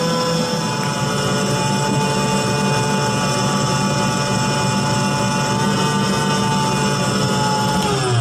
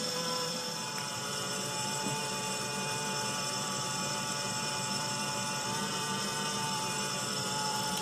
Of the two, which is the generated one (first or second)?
second